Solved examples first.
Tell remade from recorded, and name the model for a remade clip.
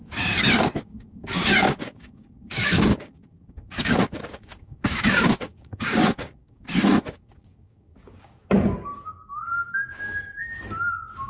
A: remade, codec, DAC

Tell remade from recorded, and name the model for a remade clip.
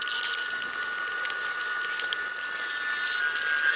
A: recorded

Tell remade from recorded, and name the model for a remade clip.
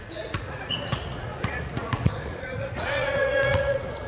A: remade, vocoder, Vocos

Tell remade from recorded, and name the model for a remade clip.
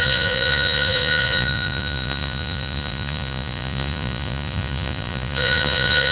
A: remade, vocoder, Vocos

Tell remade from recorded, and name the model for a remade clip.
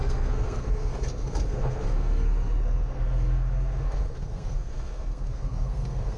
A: remade, codec, SNAC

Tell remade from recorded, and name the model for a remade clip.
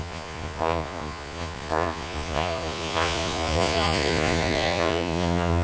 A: remade, vocoder, Vocos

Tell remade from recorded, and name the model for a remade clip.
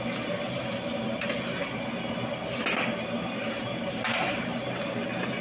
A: recorded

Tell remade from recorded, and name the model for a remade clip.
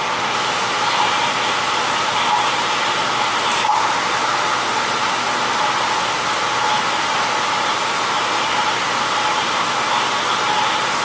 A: recorded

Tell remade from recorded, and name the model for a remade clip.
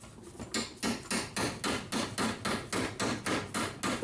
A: recorded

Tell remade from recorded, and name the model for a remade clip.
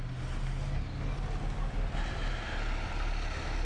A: recorded